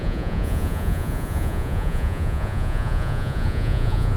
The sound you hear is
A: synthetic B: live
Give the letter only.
A